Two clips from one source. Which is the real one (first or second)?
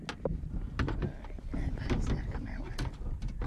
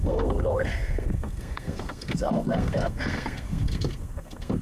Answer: first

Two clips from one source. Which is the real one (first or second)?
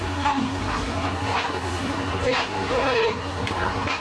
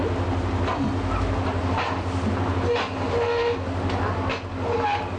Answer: second